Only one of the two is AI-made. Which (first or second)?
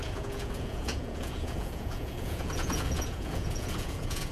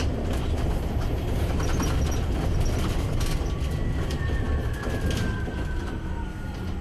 first